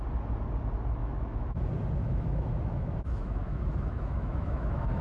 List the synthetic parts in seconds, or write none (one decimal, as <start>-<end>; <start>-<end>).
1.0-1.6; 2.0-5.0